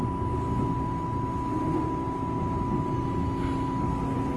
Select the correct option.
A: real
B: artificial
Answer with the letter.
A